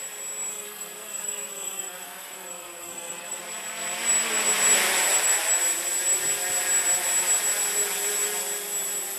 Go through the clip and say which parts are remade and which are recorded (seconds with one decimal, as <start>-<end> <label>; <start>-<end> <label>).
0.0-0.5 recorded; 0.5-3.4 remade; 3.4-9.2 recorded